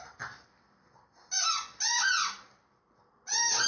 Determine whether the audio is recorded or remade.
recorded